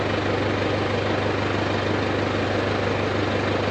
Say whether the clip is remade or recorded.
recorded